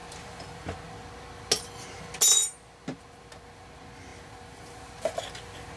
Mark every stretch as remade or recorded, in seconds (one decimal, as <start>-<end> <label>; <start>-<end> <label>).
0.0-5.8 recorded